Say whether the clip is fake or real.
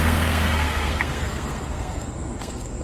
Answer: fake